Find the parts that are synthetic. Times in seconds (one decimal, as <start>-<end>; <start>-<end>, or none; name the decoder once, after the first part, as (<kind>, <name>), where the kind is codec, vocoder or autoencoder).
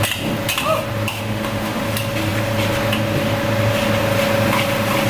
1.1-1.8 (autoencoder, DAC-VAE)